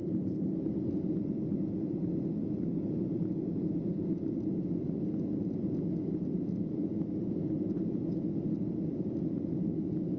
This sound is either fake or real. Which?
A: real